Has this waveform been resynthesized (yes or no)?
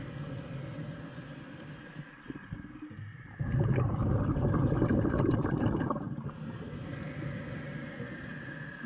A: no